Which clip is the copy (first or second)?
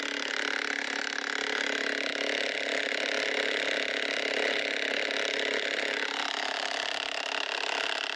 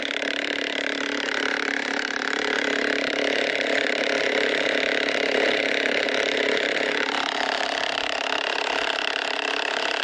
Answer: second